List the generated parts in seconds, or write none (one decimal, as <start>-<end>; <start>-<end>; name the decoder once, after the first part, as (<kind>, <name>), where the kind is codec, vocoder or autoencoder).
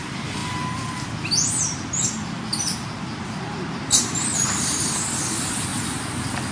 2.5-4.9 (vocoder, BigVGAN v2)